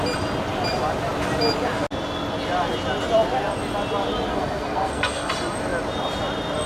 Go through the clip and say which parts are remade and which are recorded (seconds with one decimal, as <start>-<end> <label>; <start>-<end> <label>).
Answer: 0.0-4.3 recorded; 4.3-5.3 remade; 5.3-6.7 recorded